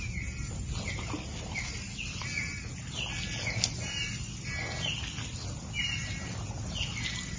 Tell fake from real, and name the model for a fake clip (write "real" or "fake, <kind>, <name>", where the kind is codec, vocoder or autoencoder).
real